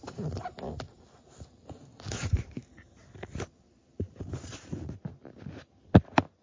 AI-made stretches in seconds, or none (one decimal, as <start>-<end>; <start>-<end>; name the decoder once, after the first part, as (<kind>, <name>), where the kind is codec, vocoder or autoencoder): 1.9-2.6 (vocoder, BigVGAN v2)